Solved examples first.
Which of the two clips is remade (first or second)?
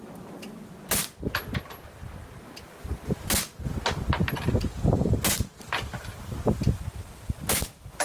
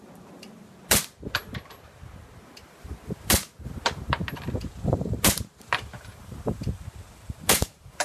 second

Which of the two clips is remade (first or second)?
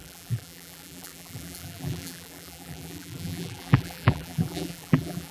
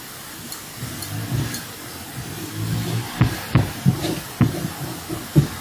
first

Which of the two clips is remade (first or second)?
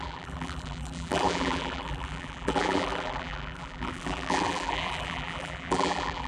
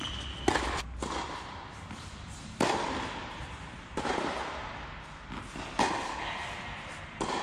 first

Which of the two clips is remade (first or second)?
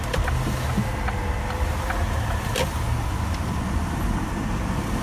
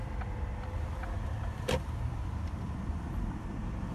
second